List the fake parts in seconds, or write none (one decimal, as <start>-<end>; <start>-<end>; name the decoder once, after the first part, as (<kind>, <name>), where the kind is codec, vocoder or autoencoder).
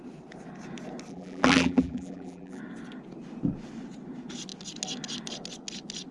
1.1-2.6 (vocoder, BigVGAN v2)